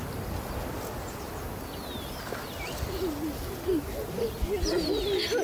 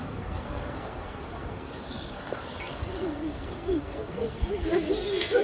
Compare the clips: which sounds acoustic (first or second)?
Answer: first